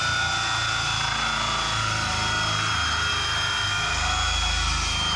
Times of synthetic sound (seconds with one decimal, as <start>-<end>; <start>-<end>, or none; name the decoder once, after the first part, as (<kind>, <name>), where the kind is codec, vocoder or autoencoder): none